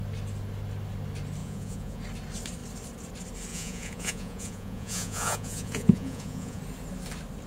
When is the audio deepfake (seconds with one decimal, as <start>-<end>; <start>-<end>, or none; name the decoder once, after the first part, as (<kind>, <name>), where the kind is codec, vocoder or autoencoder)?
1.4-2.0 (vocoder, Vocos); 3.5-6.6